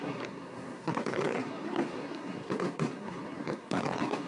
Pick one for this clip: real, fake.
fake